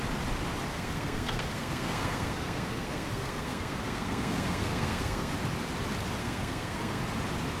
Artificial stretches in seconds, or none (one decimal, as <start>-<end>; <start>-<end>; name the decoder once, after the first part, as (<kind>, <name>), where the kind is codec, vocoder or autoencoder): 0.7-5.3 (codec, SNAC); 6.2-7.0